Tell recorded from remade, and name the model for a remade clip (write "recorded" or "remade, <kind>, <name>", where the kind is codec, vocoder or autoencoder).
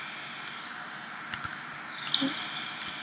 recorded